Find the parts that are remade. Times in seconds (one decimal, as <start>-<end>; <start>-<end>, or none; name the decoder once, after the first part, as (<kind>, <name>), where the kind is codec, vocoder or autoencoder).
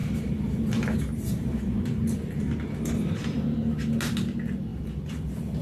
0.0-3.4 (vocoder, BigVGAN v2); 4.7-5.6